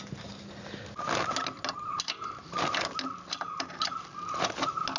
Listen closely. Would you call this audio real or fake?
real